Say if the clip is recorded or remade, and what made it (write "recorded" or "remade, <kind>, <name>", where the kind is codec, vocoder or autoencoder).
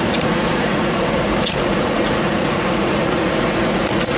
remade, vocoder, Vocos